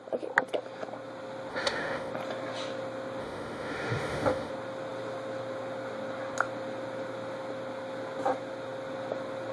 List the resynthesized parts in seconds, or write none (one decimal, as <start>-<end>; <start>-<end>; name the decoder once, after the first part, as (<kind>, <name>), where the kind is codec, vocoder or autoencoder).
1.5-2.1 (autoencoder, DAC-VAE); 3.2-4.5